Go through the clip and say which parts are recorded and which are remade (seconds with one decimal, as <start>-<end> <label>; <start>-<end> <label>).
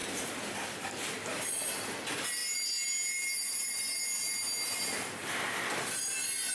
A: 0.0-6.5 recorded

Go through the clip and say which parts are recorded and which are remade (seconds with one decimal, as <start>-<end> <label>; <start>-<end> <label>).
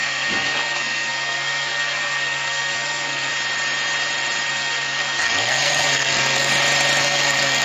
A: 0.0-3.3 remade; 3.3-4.5 recorded; 4.5-6.5 remade; 6.5-7.0 recorded; 7.0-7.6 remade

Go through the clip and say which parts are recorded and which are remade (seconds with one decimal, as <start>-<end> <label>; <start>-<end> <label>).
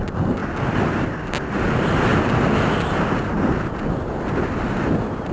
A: 0.0-5.3 recorded